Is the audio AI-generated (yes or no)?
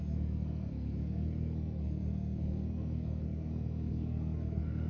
yes